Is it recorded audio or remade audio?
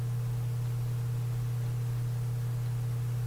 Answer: recorded